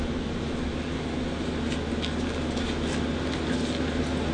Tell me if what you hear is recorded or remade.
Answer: recorded